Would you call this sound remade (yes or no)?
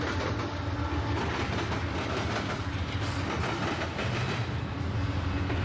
no